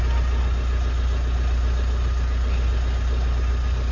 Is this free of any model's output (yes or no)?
yes